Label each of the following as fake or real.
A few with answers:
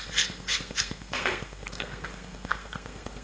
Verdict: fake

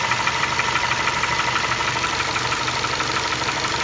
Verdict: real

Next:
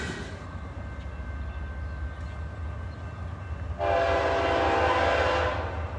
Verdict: real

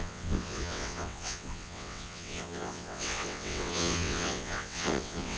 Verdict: fake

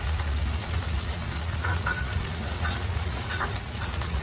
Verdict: fake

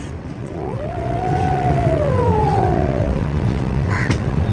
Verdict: fake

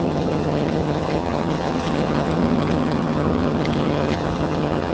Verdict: fake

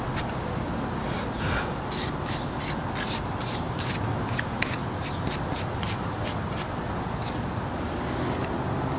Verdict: real